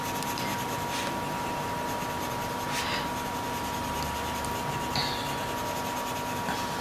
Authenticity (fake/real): real